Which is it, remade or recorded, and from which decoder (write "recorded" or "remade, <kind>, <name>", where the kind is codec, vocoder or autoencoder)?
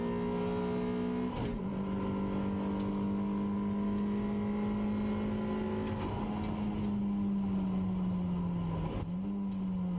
recorded